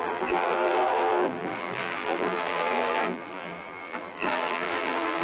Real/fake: fake